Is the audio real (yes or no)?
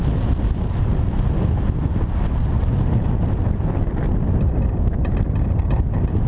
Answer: yes